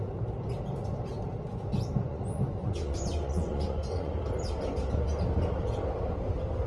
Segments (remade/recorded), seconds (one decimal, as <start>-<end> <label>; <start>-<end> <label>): 0.0-1.6 recorded; 1.6-4.2 remade; 4.2-6.7 recorded